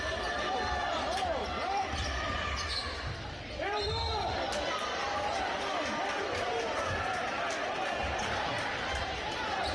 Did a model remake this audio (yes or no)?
yes